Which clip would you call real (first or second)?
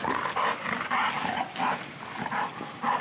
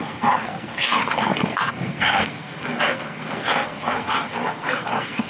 first